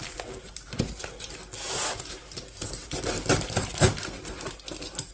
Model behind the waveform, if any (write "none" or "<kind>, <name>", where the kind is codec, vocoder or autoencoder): none